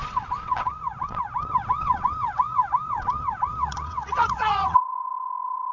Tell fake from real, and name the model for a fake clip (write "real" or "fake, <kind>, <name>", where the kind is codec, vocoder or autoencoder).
fake, vocoder, WaveNeXt